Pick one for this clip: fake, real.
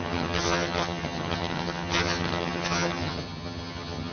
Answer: fake